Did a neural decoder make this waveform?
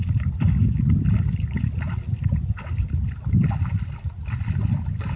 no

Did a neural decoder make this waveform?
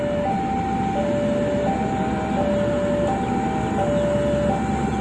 no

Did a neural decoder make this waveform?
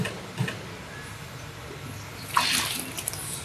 no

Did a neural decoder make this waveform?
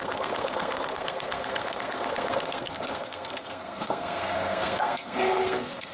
yes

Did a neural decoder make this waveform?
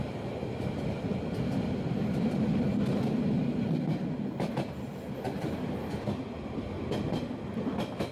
no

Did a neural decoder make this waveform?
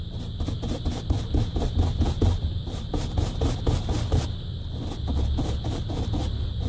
no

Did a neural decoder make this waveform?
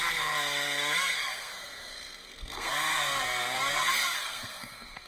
yes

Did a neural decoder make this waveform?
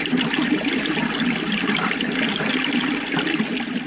no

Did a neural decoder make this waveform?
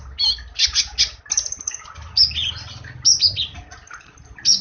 no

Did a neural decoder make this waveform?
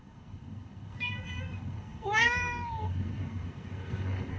yes